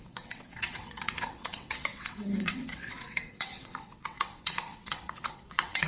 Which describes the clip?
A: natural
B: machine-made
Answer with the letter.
B